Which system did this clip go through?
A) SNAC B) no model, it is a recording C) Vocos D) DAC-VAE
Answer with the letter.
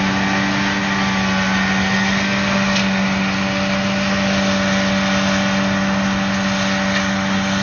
B